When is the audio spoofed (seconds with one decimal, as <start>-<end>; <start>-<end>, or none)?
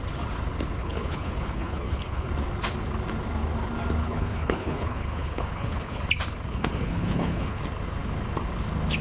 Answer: 0.8-2.3; 4.0-6.0; 6.5-7.6